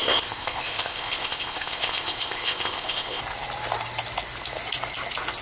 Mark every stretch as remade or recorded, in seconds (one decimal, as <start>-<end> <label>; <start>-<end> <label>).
0.0-3.2 remade; 3.2-5.4 recorded